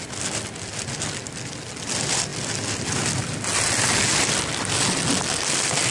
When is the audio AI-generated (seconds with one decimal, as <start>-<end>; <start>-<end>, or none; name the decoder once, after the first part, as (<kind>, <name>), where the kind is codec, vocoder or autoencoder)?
none